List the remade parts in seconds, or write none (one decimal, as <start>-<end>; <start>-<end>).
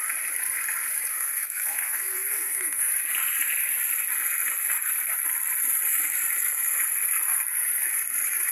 1.1-2.9